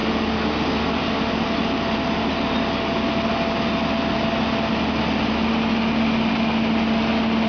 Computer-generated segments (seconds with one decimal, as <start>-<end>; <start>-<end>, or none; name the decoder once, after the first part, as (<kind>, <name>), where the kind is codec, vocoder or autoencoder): none